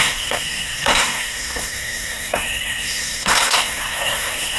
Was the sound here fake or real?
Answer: fake